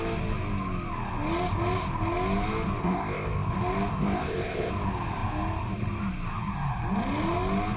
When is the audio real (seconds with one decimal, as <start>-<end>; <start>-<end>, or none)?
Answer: 0.0-2.8; 3.5-3.9; 4.7-7.8